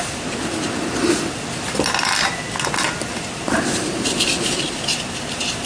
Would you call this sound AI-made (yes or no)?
no